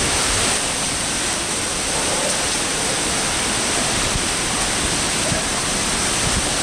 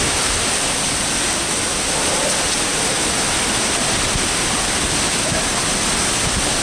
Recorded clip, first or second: second